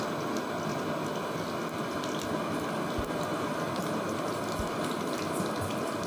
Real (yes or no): yes